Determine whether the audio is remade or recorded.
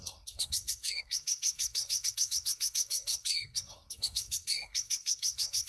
remade